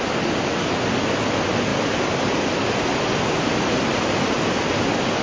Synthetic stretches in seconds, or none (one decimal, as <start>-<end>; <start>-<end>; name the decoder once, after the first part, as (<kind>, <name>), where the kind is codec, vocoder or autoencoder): none